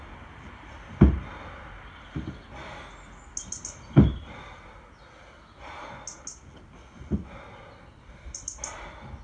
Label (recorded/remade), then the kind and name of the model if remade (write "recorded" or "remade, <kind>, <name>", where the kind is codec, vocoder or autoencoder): recorded